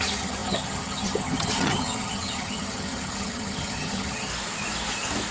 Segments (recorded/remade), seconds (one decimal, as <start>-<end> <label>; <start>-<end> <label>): 0.0-4.3 remade; 4.3-5.3 recorded